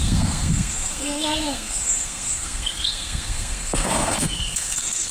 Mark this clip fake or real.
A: fake